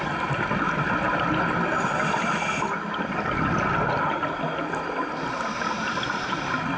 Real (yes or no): yes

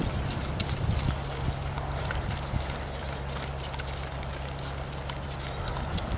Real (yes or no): yes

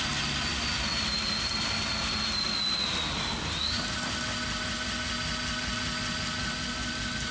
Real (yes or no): yes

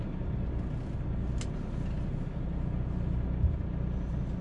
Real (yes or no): yes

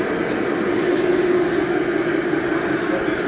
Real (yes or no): yes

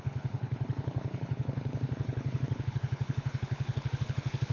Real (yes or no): no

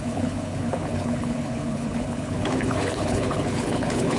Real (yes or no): no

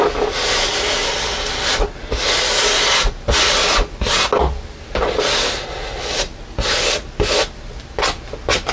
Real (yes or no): yes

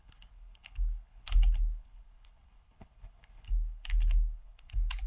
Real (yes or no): no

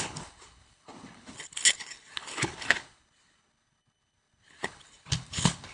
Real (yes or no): no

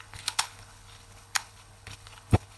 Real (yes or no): no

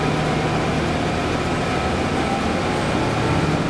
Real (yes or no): yes